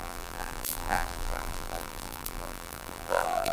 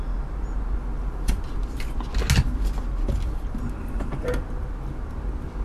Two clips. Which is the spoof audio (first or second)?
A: first